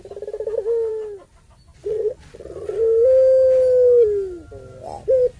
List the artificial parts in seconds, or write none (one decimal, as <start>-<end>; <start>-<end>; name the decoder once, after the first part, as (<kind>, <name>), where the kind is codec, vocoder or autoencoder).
1.8-2.8 (vocoder, Vocos)